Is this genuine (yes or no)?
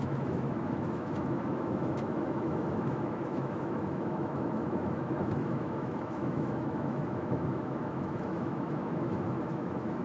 no